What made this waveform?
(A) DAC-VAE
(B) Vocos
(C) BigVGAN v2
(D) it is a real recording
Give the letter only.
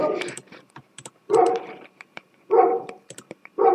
C